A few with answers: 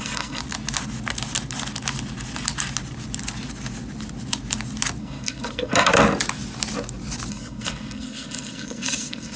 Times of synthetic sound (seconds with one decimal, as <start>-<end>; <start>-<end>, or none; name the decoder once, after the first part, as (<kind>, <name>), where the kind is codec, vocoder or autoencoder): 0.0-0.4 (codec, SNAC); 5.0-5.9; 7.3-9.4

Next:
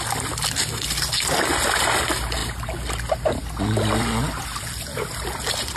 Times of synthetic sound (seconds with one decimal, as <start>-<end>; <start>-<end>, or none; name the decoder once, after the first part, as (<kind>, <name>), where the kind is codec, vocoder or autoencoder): none

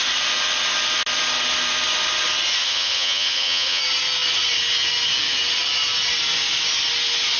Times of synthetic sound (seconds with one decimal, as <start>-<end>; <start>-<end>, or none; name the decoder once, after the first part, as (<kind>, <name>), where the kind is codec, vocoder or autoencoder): 2.6-3.8 (vocoder, HiFi-GAN)